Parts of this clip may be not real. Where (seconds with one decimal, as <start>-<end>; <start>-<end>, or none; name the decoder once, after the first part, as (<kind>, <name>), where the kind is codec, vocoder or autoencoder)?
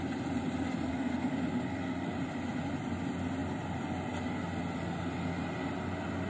0.9-2.1 (codec, SNAC)